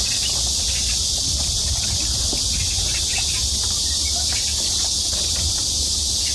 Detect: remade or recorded recorded